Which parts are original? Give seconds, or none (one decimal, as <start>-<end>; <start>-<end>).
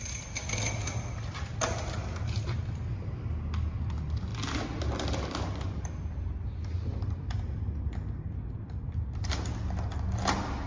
0.0-10.7